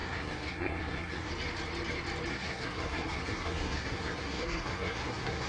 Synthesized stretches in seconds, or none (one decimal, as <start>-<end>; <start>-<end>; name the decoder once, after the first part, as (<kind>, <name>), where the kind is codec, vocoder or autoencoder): 0.0-1.3 (codec, SNAC); 2.3-5.5